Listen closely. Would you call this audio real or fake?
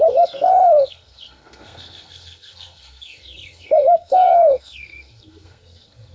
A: fake